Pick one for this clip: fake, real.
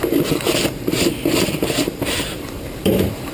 fake